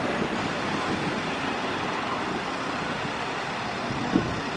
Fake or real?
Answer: real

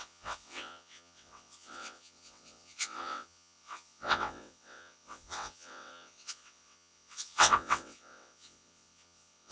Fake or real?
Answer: fake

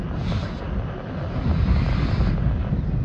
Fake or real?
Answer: real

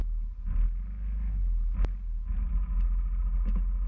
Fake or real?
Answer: real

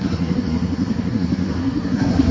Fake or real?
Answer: fake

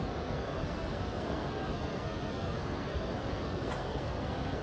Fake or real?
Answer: fake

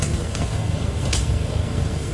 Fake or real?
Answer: fake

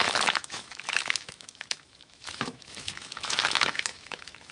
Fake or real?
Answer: fake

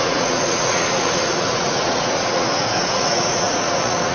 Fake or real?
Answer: fake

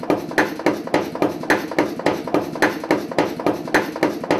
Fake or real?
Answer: real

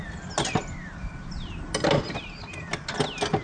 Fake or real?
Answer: real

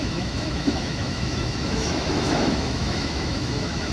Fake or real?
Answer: fake